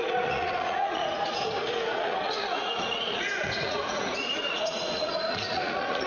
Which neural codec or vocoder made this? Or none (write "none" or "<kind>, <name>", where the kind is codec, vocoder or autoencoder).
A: vocoder, Vocos